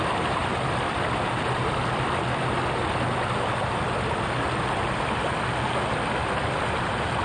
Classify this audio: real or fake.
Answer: real